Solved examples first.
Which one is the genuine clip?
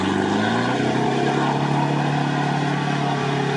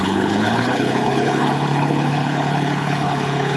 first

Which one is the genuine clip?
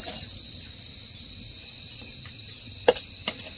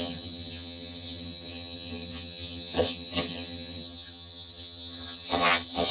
first